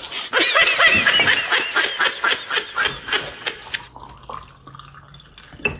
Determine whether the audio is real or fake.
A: real